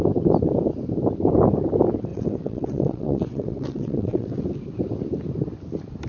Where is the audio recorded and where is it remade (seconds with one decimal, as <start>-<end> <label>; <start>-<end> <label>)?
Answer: 0.0-2.1 recorded; 2.1-4.4 remade; 4.4-6.1 recorded